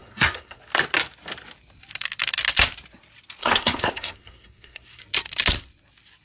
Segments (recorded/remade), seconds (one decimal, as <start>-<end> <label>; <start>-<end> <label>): 0.0-0.6 remade; 0.6-3.4 recorded; 3.4-5.0 remade; 5.0-6.2 recorded